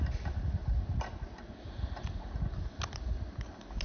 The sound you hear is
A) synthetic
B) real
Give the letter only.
B